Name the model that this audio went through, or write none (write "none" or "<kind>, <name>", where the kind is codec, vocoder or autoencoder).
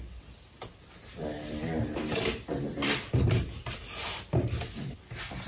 vocoder, BigVGAN v2